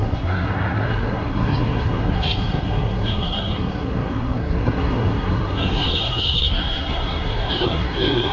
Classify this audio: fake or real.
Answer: fake